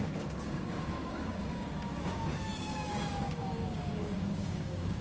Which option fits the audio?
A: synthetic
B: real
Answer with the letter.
A